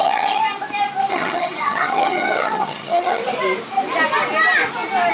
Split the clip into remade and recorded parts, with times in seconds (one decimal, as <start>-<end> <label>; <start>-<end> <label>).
0.0-0.4 remade; 0.4-1.1 recorded; 1.1-3.2 remade; 3.2-5.1 recorded